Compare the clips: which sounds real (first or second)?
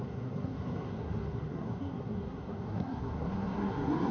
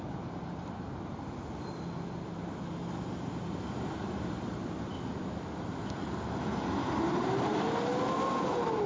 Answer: second